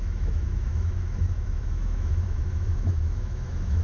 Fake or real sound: fake